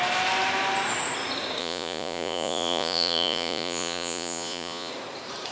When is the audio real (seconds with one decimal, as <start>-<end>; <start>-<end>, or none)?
0.0-1.6; 4.9-5.5